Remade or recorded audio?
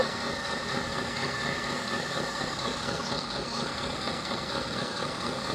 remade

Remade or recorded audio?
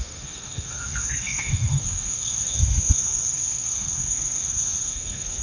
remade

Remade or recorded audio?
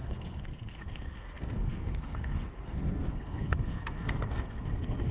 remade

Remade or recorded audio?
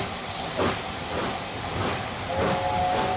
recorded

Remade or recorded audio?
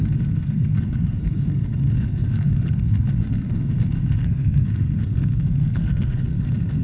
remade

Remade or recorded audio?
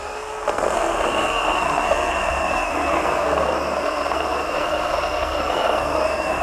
remade